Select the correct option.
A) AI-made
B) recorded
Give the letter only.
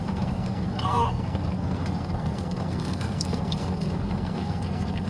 A